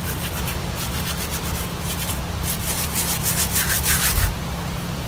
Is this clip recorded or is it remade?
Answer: recorded